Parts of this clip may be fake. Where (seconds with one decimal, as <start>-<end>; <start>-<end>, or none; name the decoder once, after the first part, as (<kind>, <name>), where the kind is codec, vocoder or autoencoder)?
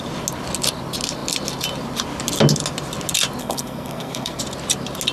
3.4-4.4 (codec, SNAC)